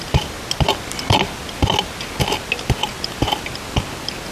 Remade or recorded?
recorded